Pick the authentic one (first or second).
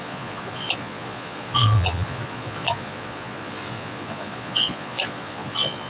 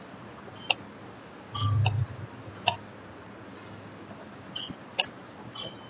second